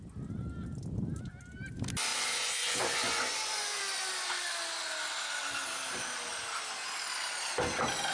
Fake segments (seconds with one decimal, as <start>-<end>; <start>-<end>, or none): 2.1-3.8